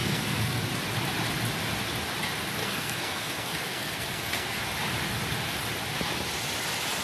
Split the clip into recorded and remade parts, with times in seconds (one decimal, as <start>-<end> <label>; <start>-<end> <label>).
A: 0.0-0.6 remade; 0.6-2.6 recorded; 2.6-4.6 remade; 4.6-7.0 recorded